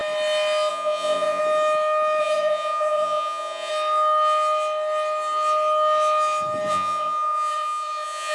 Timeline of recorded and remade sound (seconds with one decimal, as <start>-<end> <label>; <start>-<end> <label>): 0.0-0.7 recorded; 0.7-1.4 remade; 1.4-2.2 recorded; 2.2-3.7 remade; 3.7-6.7 recorded; 6.7-8.3 remade